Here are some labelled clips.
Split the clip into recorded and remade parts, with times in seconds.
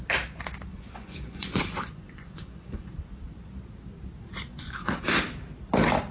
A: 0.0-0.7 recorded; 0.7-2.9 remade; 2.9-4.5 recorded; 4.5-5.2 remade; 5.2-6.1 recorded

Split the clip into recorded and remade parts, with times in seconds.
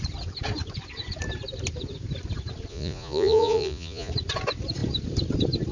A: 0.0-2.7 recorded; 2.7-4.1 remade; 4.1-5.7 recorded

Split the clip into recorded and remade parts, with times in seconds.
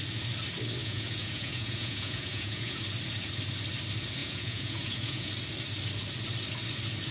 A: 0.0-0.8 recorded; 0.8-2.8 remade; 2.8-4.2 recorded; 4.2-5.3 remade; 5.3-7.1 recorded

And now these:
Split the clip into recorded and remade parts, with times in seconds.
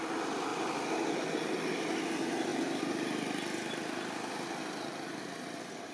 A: 0.0-5.9 recorded